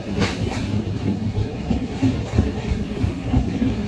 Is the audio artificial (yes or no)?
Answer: yes